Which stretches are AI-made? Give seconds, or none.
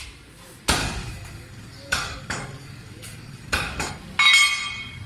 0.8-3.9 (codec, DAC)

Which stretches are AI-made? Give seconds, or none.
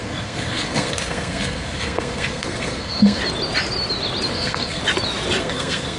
0.0-3.2 (codec, SNAC); 4.3-4.8; 5.4-6.0